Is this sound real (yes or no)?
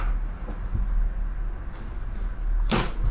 yes